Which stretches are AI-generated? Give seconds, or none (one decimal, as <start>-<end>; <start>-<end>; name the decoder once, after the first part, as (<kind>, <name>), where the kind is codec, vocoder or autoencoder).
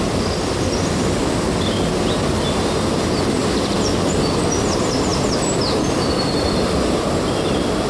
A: none